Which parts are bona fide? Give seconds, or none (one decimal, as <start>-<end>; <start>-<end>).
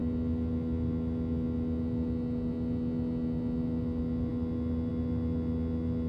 0.0-6.1